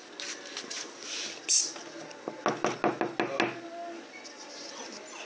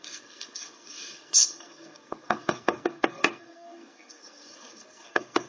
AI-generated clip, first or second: second